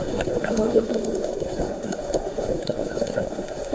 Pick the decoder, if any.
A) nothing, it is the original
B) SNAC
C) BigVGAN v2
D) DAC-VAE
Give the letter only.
B